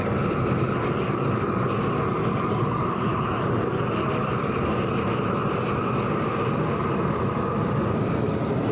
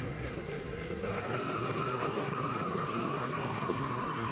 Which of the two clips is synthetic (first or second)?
second